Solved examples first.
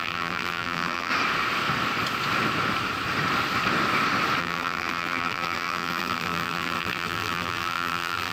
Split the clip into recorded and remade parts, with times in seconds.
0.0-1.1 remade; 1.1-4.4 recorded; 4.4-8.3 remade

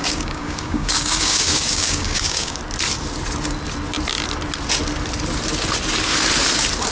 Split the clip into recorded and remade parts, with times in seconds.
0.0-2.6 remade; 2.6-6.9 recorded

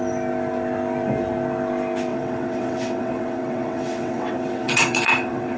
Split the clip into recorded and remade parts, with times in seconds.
0.0-2.1 recorded; 2.1-5.6 remade

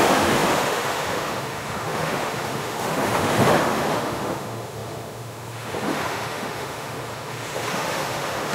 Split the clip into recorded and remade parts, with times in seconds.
0.0-8.5 remade

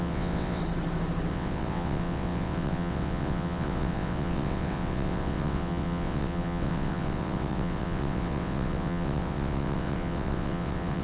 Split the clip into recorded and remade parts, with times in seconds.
0.0-0.6 remade; 0.6-1.3 recorded; 1.3-11.0 remade

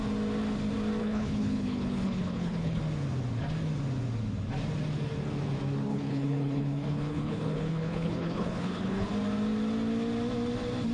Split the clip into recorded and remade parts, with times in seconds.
0.0-1.0 recorded; 1.0-2.8 remade; 2.8-5.9 recorded; 5.9-9.1 remade; 9.1-10.9 recorded